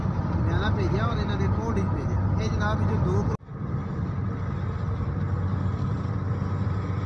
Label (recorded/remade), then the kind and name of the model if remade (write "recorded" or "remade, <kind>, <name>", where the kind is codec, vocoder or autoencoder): recorded